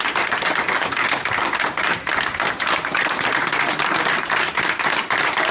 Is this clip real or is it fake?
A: real